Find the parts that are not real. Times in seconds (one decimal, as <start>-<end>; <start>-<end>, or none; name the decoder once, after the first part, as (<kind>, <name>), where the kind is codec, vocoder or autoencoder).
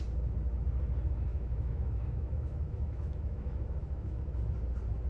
1.3-4.4 (autoencoder, DAC-VAE)